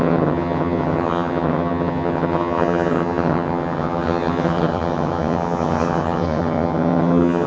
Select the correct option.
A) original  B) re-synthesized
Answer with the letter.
B